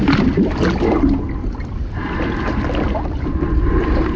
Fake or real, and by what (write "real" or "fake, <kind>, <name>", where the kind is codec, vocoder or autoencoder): real